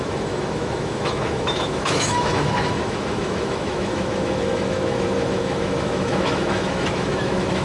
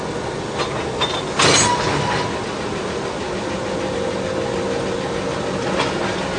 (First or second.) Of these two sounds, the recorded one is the second